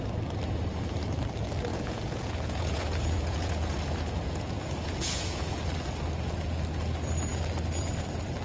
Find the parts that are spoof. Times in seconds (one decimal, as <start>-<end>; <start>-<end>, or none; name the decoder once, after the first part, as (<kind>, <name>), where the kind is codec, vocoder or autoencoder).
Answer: 1.7-5.6 (vocoder, Vocos)